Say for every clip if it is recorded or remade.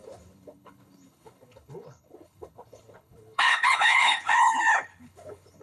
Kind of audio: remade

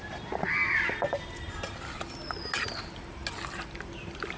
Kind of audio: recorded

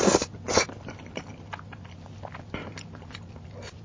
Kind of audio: recorded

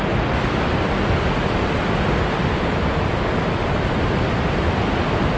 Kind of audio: recorded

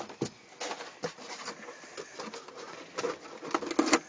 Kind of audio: recorded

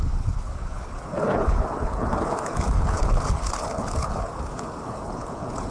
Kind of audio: remade